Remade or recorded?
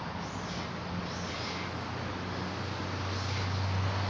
recorded